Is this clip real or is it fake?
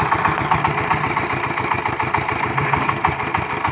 fake